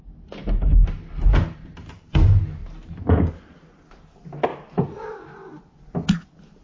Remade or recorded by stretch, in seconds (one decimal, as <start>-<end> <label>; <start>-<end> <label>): 0.0-0.4 recorded; 0.4-2.2 remade; 2.2-4.5 recorded; 4.5-5.1 remade; 5.1-6.6 recorded